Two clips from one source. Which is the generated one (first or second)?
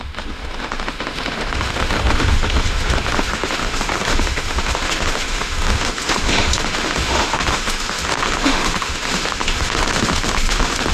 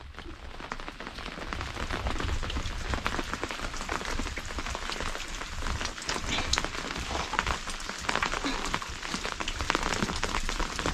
first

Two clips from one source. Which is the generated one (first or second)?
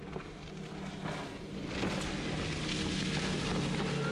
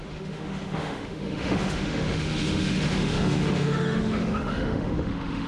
second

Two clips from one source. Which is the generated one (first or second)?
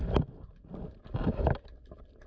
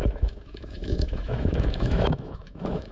second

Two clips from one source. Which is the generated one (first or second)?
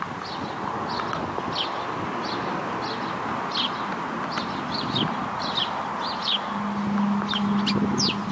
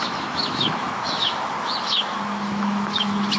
second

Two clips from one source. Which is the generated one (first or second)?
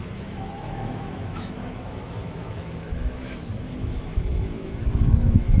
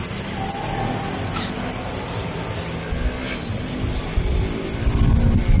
first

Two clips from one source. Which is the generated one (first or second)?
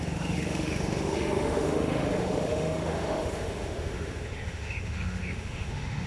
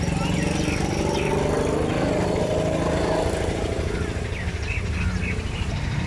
first